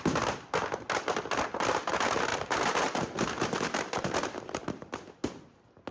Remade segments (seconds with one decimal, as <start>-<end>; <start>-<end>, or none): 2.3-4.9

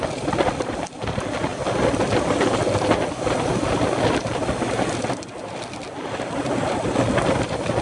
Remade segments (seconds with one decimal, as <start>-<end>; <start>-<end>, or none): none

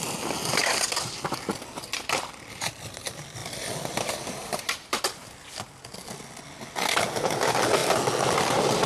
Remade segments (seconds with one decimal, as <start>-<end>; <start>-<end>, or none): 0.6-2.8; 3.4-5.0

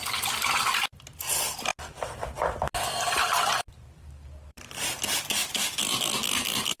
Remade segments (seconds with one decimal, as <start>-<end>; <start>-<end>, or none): 1.7-5.0

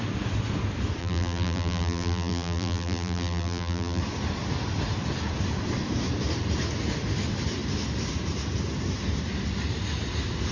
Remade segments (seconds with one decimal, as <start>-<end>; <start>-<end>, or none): 1.0-4.0

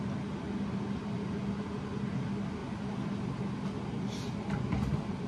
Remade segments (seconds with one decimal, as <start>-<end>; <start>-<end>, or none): none